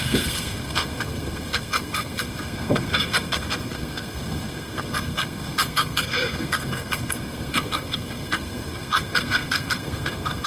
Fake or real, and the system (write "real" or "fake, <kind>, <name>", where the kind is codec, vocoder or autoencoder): fake, codec, SNAC